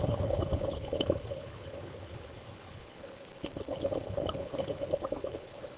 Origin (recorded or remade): remade